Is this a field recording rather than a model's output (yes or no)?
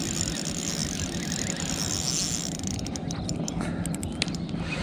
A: yes